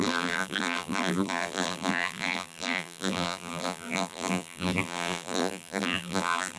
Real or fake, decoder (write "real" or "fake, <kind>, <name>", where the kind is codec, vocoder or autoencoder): fake, vocoder, BigVGAN v2